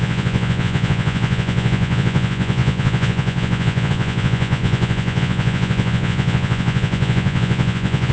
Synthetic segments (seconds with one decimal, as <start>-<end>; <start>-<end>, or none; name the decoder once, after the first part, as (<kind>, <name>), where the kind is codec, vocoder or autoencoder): 0.0-8.1 (vocoder, Vocos)